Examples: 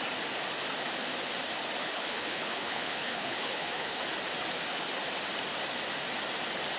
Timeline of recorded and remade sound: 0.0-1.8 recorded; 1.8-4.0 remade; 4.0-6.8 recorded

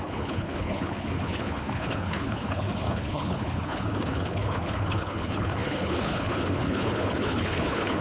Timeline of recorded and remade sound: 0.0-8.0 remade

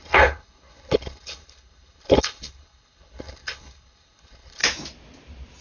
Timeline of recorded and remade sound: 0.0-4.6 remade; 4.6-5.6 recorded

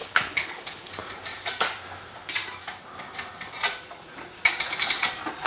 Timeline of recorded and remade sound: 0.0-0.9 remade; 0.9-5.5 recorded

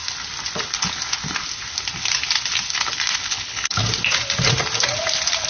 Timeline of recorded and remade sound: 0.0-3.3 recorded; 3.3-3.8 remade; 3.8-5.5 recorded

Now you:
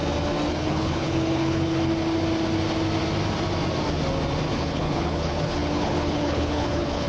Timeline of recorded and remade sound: 0.0-0.5 recorded; 0.5-1.9 remade; 1.9-4.5 recorded; 4.5-7.1 remade

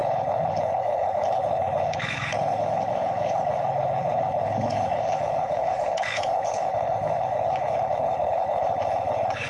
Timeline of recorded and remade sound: 0.0-9.5 remade